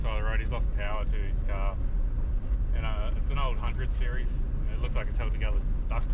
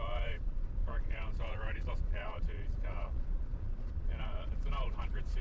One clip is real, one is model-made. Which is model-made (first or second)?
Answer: second